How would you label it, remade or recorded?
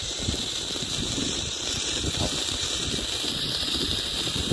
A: remade